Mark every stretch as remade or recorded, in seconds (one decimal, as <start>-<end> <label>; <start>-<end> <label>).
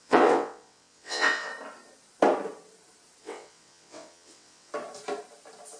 0.0-1.5 remade; 1.5-3.2 recorded; 3.2-4.7 remade; 4.7-5.8 recorded